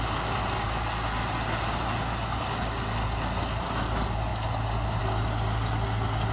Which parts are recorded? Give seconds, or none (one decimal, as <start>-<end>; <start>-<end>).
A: 0.0-6.3